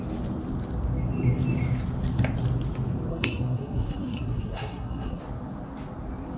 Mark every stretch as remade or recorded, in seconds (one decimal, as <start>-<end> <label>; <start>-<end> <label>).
0.0-3.1 recorded; 3.1-5.2 remade; 5.2-6.4 recorded